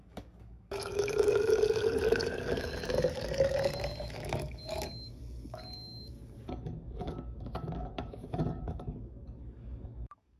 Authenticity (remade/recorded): remade